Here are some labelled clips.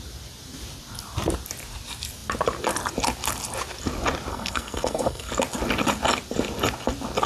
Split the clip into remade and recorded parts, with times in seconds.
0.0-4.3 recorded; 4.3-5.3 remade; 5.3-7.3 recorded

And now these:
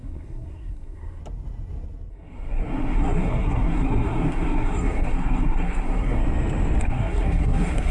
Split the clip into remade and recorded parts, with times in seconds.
0.0-1.2 remade; 1.2-2.1 recorded; 2.1-6.2 remade; 6.2-6.8 recorded; 6.8-7.9 remade